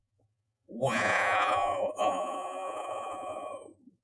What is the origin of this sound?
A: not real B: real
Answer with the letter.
A